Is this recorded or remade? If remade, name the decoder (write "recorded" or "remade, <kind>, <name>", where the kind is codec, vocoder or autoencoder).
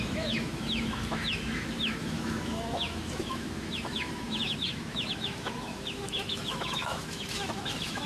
remade, autoencoder, DAC-VAE